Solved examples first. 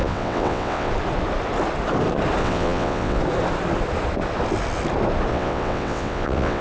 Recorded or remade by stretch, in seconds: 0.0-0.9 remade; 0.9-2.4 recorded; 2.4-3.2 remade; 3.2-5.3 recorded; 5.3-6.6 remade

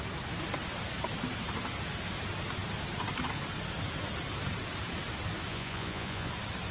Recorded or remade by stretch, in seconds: 0.0-5.5 recorded; 5.5-6.3 remade; 6.3-6.7 recorded

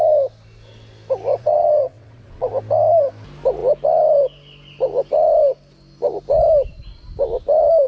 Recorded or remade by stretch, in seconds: 0.0-1.3 recorded; 1.3-2.5 remade; 2.5-7.9 recorded

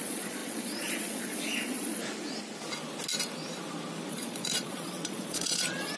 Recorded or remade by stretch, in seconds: 0.0-2.0 remade; 2.0-4.1 recorded; 4.1-6.0 remade

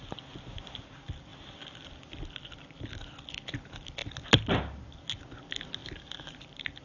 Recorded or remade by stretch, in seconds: 0.0-5.8 recorded; 5.8-6.8 remade

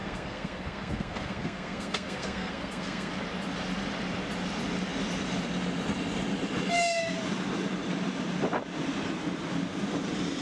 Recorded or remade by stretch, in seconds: 0.0-3.1 remade; 3.1-10.4 recorded